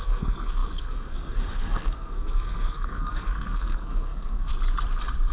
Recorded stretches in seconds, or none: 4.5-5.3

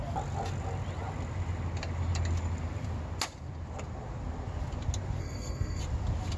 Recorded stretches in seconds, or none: 0.0-5.2; 5.8-6.4

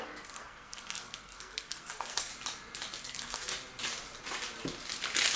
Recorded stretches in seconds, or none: 2.3-3.1; 3.5-5.4

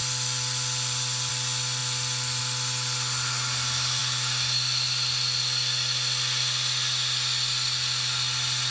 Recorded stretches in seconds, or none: 1.3-8.7

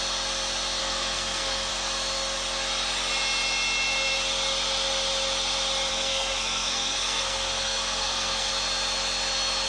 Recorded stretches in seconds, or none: 0.0-0.8; 1.7-5.9; 8.5-9.7

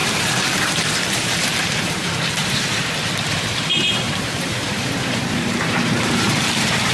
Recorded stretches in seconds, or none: none

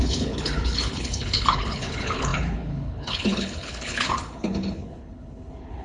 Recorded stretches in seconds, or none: none

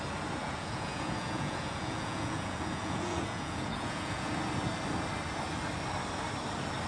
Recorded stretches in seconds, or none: 0.0-0.4; 4.3-6.9